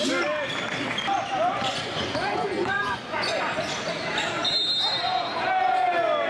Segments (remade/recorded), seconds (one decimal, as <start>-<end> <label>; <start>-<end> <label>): 0.0-1.5 recorded; 1.5-3.4 remade; 3.4-6.3 recorded